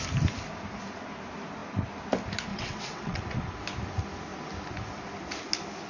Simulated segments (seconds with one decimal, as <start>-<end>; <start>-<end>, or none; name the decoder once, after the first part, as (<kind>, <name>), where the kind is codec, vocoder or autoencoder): 2.5-3.2 (vocoder, WaveNeXt)